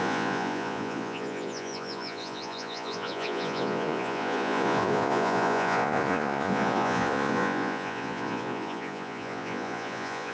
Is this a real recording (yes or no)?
no